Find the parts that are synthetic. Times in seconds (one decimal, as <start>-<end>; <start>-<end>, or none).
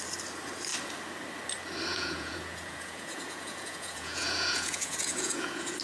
1.9-5.8